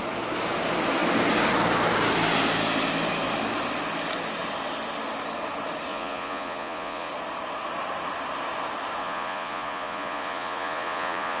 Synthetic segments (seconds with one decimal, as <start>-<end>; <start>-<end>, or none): 5.9-7.1; 9.0-11.4